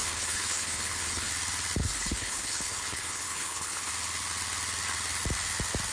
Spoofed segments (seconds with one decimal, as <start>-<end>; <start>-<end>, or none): 0.0-1.3; 1.8-3.9